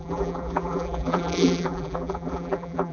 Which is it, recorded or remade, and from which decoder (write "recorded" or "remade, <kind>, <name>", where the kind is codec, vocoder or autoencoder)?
remade, vocoder, BigVGAN v2